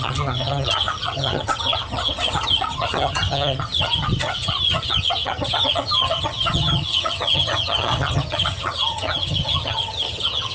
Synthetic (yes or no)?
yes